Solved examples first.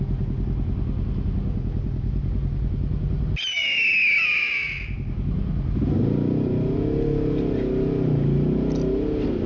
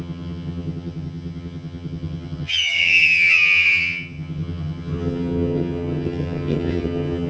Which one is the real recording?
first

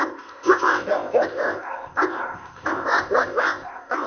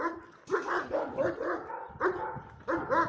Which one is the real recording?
second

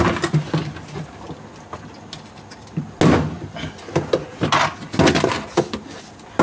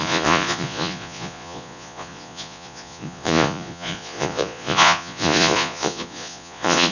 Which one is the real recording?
first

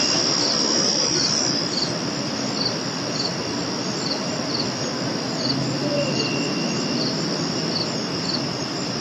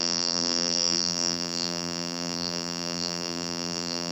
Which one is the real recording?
first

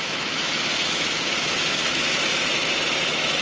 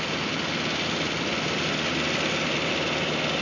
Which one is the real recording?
second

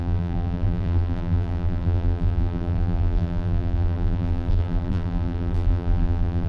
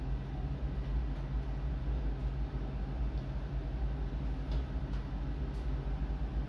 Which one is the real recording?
second